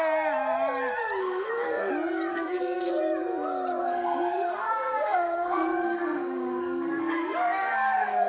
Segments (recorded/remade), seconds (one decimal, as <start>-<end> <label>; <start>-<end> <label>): 0.0-1.2 recorded; 1.2-1.9 remade; 1.9-2.3 recorded; 2.3-3.0 remade; 3.0-3.8 recorded; 3.8-8.3 remade